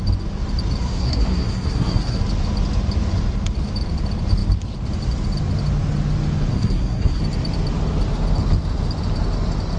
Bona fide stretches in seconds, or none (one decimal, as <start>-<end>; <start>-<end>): 0.0-0.8; 2.2-6.5; 7.2-9.8